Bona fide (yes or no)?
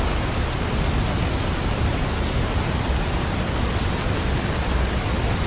yes